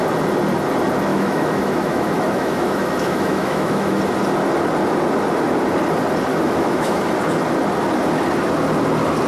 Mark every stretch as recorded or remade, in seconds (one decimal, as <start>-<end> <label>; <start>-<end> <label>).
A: 0.0-1.1 recorded; 1.1-4.0 remade; 4.0-6.3 recorded; 6.3-7.0 remade; 7.0-9.3 recorded

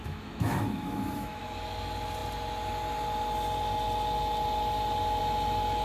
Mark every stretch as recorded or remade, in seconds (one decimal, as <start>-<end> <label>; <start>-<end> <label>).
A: 0.0-1.4 remade; 1.4-5.8 recorded

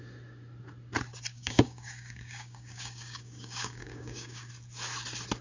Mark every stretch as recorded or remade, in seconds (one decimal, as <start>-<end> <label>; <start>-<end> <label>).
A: 0.0-1.3 recorded; 1.3-4.5 remade; 4.5-5.4 recorded

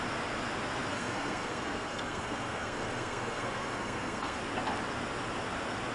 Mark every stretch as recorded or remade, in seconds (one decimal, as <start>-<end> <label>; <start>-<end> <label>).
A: 0.0-0.9 recorded; 0.9-4.4 remade; 4.4-5.9 recorded